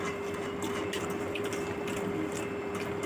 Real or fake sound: real